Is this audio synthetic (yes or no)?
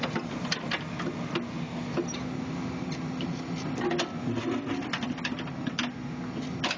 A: no